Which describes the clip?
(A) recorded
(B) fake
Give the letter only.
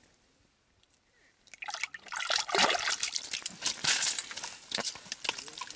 A